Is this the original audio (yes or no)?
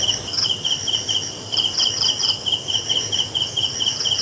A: yes